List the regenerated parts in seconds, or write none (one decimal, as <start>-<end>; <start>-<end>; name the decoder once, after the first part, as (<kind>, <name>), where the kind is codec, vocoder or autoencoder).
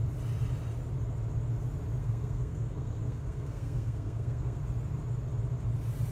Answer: 2.0-4.6 (codec, SNAC)